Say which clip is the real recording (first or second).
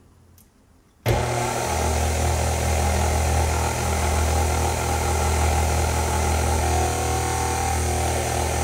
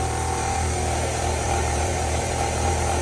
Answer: first